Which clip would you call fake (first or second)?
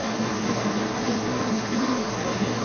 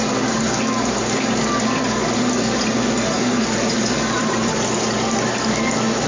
first